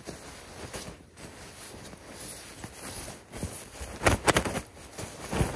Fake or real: real